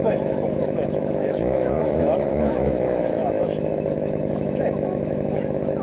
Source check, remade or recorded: remade